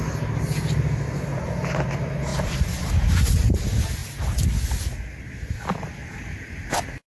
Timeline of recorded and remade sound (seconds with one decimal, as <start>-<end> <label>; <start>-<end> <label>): 0.0-7.1 recorded